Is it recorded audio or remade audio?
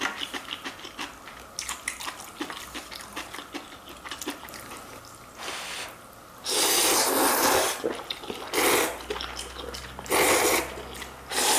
recorded